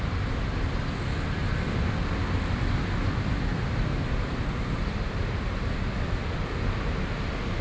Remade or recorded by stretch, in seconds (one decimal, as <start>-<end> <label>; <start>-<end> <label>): 0.0-3.5 recorded; 3.5-5.7 remade; 5.7-7.6 recorded